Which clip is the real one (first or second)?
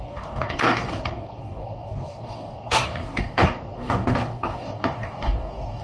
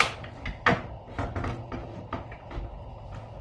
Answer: second